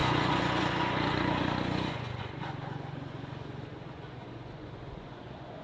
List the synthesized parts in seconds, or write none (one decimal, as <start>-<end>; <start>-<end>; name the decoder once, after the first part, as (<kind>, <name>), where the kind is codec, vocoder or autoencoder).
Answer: 0.0-5.6 (vocoder, Vocos)